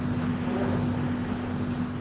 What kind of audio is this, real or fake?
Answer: real